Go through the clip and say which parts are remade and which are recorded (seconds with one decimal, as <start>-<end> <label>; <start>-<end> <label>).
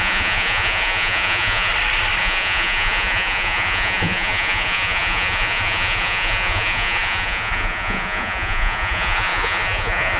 0.0-1.7 remade; 1.7-2.2 recorded; 2.2-10.2 remade